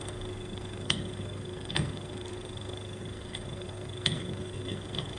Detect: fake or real fake